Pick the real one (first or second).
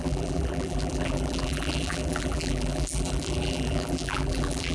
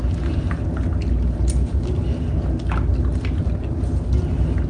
second